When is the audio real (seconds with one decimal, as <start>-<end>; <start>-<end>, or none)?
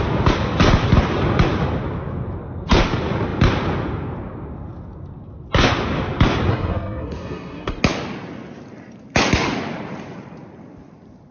0.0-6.5; 7.8-11.3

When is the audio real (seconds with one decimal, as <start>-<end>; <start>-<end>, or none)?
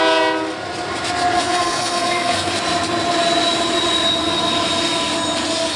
0.0-1.4; 2.5-5.8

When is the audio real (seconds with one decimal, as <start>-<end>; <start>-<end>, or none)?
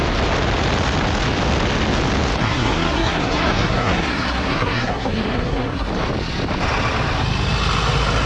0.0-2.4; 5.9-8.3